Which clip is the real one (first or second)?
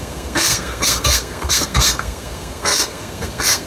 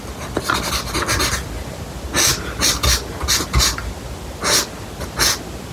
second